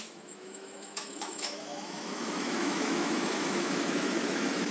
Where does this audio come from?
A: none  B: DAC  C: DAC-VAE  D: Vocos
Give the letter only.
C